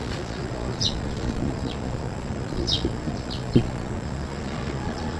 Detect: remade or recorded remade